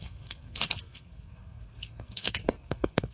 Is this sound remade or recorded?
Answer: remade